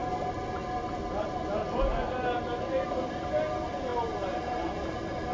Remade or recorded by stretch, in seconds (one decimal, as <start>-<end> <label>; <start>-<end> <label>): 0.0-5.3 recorded